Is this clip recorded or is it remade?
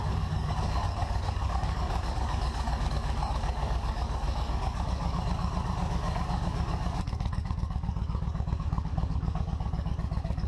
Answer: remade